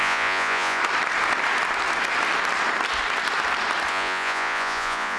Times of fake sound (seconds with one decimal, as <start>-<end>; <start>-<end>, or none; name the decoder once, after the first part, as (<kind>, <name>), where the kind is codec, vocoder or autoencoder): 0.0-0.8 (vocoder, Vocos); 3.9-5.2